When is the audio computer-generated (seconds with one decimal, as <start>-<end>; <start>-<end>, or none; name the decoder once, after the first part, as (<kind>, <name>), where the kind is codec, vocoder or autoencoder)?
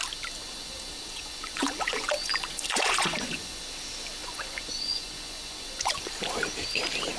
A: 0.4-3.6 (vocoder, Vocos); 4.2-6.2